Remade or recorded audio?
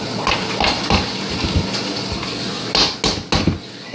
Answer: recorded